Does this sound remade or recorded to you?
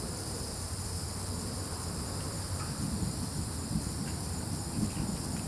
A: remade